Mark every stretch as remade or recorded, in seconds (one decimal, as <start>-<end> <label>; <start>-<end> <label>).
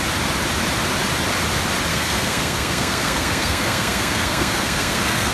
0.0-1.9 recorded; 1.9-5.3 remade